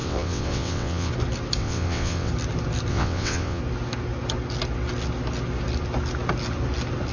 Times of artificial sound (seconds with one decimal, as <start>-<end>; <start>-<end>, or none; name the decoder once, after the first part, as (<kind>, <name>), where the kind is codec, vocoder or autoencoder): 0.0-1.1 (vocoder, WaveNeXt); 1.6-2.3; 2.9-3.6